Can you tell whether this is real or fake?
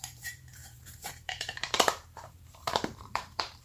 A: fake